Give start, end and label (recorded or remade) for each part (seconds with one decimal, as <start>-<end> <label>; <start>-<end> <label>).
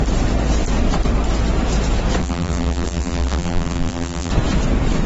0.0-2.2 recorded; 2.2-4.3 remade; 4.3-5.1 recorded